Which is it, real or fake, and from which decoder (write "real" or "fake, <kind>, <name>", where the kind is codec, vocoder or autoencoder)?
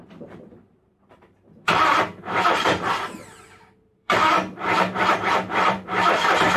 fake, vocoder, BigVGAN v2